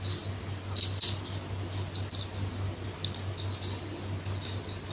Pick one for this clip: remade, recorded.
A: recorded